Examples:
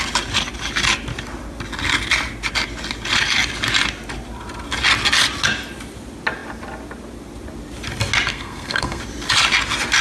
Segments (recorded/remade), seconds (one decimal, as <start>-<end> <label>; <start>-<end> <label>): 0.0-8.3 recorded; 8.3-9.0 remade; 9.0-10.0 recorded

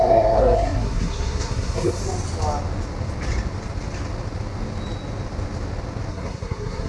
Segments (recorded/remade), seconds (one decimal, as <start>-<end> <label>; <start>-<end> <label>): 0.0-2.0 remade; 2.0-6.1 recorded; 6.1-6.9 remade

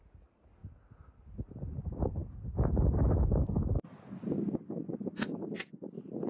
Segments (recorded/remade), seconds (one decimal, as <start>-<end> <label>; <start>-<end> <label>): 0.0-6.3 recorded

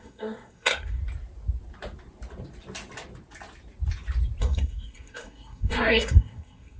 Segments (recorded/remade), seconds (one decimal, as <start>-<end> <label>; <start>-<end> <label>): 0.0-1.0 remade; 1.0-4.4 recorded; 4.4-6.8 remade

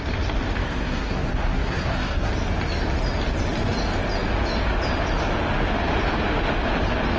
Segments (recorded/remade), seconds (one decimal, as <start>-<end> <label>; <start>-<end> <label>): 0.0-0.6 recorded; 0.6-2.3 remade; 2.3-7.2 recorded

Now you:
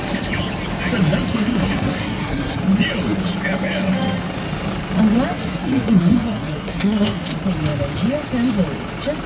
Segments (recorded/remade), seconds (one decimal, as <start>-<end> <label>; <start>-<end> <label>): 0.0-1.3 recorded; 1.3-2.6 remade; 2.6-5.3 recorded; 5.3-7.3 remade; 7.3-9.3 recorded